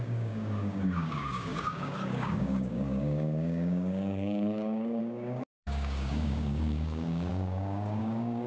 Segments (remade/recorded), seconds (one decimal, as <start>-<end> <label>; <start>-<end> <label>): 0.0-8.5 remade